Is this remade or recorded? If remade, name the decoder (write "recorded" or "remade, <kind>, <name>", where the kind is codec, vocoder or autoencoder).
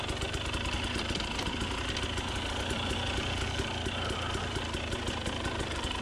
recorded